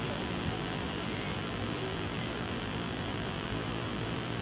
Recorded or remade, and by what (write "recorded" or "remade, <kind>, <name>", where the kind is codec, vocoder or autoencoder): remade, vocoder, BigVGAN v2